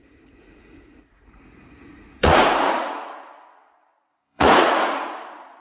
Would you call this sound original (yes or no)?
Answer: no